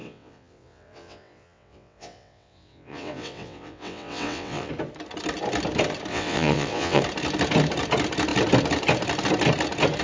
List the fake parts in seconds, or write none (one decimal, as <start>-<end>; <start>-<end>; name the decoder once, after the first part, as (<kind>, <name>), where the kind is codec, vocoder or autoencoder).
0.0-4.7 (vocoder, WaveNeXt); 6.1-7.0